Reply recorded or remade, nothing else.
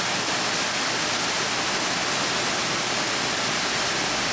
recorded